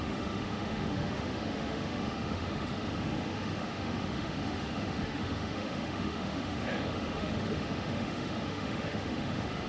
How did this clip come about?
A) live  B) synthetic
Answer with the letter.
B